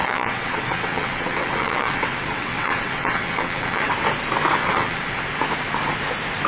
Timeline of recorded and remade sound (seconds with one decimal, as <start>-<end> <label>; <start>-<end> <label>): 0.0-3.9 remade; 3.9-4.6 recorded; 4.6-5.2 remade; 5.2-6.5 recorded